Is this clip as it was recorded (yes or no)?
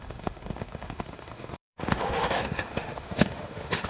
no